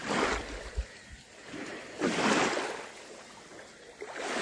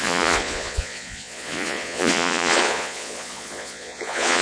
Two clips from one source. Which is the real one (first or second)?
first